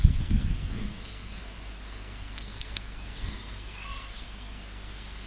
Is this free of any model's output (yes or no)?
no